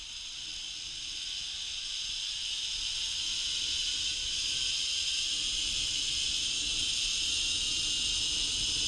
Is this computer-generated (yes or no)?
no